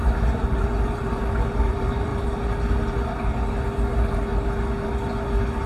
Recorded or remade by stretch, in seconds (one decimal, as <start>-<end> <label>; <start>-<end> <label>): 0.0-2.1 remade; 2.1-5.7 recorded

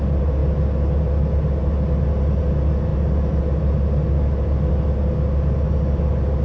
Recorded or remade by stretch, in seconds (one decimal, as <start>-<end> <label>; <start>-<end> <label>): 0.0-6.4 recorded